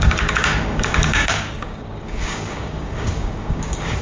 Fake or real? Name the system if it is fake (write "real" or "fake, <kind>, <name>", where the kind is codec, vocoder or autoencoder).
fake, codec, DAC